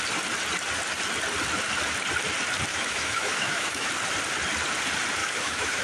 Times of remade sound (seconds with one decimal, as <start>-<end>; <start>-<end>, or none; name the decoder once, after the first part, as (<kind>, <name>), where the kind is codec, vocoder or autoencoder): 2.7-3.9 (autoencoder, DAC-VAE); 5.2-5.8